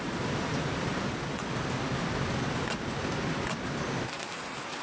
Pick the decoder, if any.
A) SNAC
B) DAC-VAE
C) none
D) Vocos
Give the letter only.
C